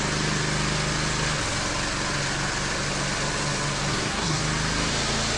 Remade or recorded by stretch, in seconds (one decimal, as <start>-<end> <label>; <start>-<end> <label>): 0.0-3.9 recorded; 3.9-4.4 remade; 4.4-5.4 recorded